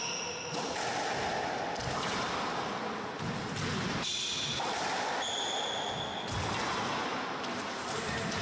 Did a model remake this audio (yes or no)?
no